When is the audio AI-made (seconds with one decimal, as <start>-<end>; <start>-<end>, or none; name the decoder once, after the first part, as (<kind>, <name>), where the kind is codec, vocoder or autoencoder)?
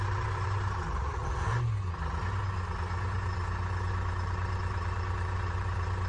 0.0-1.2 (vocoder, BigVGAN v2); 3.9-6.1